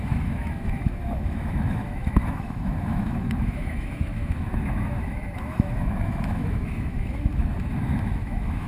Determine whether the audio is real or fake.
fake